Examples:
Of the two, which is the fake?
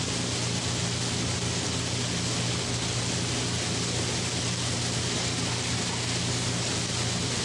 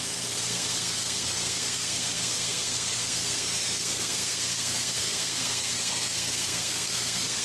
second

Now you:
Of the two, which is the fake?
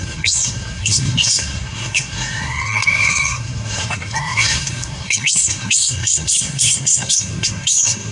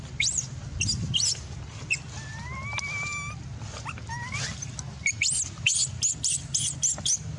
first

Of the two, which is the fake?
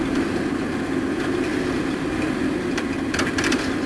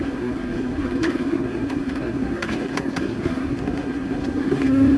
second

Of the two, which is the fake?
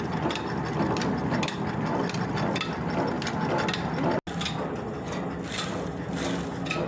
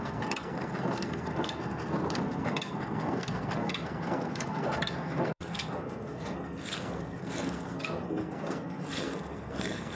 second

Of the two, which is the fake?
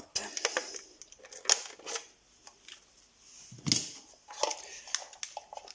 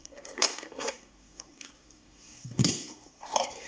second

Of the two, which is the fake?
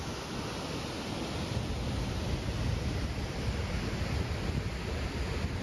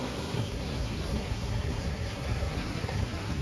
second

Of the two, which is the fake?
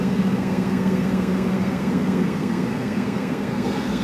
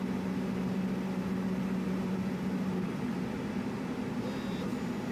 first